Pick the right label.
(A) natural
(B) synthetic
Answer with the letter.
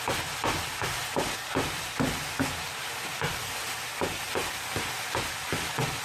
A